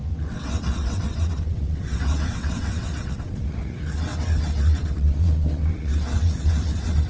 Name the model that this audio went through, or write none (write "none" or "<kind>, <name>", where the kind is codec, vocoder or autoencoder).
vocoder, WaveNeXt